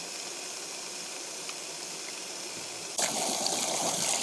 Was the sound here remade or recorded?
recorded